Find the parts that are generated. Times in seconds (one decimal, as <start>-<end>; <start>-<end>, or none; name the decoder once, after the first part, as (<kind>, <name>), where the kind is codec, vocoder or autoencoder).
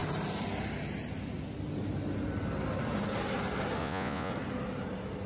3.8-4.3 (vocoder, Vocos)